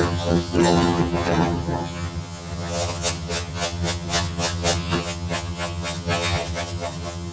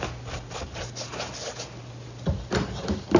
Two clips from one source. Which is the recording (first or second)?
second